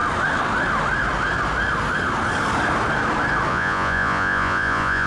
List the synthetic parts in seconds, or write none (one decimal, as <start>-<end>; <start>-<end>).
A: 3.5-5.1